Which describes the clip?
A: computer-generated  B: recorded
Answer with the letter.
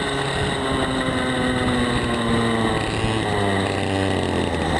B